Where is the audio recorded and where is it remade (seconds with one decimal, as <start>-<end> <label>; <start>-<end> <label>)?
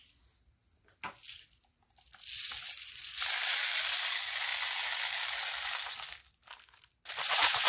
0.0-7.7 recorded